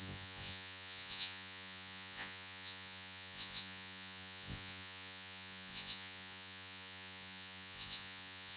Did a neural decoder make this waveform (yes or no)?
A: yes